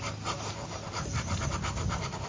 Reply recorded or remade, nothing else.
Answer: recorded